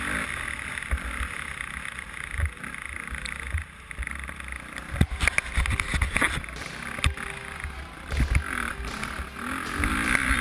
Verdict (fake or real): real